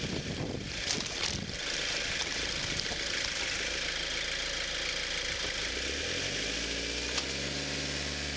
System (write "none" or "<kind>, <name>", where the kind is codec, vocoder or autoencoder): none